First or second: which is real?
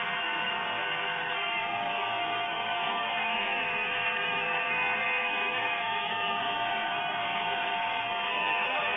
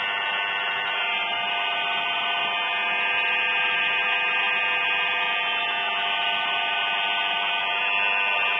second